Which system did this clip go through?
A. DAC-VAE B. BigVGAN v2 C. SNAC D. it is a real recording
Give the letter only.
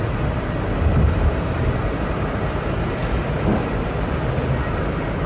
D